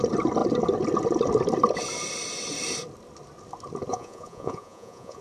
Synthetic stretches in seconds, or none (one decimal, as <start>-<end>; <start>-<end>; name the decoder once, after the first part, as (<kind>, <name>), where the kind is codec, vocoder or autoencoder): 3.9-5.2 (vocoder, Vocos)